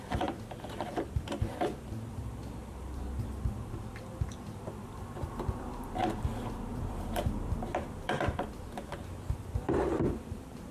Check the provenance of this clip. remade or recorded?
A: remade